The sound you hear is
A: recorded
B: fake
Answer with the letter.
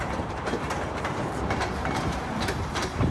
B